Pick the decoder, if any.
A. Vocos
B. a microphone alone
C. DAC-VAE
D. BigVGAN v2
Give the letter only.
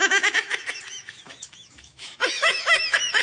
C